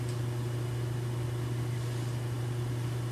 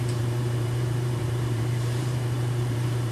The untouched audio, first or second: first